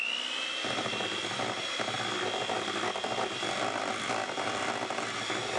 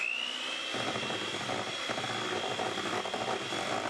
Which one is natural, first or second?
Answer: first